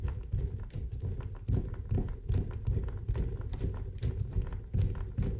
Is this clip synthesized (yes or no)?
no